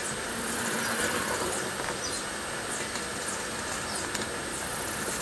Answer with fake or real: real